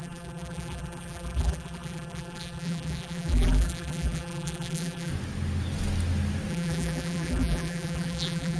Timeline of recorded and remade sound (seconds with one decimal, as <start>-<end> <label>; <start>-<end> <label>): 0.0-5.1 remade; 5.1-6.5 recorded; 6.5-8.6 remade